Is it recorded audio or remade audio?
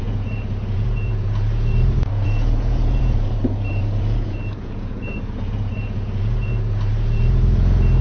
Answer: remade